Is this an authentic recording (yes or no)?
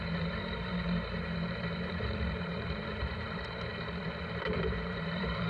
no